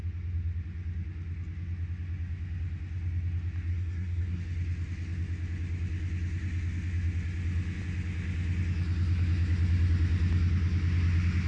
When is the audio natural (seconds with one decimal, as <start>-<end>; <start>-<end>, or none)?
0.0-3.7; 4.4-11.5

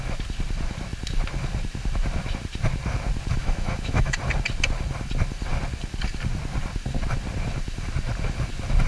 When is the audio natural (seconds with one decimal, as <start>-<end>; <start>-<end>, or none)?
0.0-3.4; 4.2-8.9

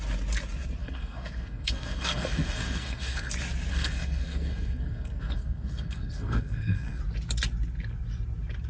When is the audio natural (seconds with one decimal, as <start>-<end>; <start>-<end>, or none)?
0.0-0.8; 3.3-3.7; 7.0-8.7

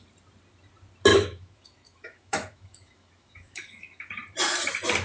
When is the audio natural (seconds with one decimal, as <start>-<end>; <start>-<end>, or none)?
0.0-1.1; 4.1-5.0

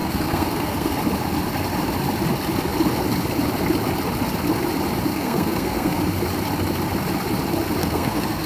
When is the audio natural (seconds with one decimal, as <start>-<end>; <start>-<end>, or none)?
1.0-5.1; 6.0-7.8

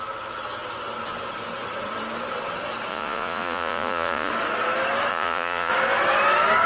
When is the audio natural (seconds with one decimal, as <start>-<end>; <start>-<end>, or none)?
0.0-2.9; 4.3-5.1; 5.7-6.7